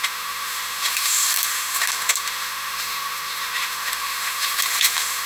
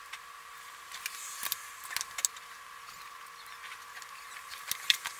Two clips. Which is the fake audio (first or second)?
first